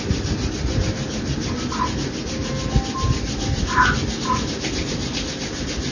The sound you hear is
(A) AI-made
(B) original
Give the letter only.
B